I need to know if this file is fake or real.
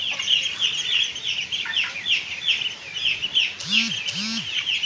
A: real